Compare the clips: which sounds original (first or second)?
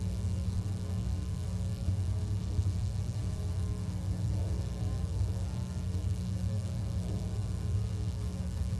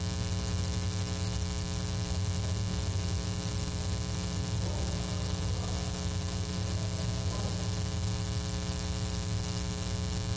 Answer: second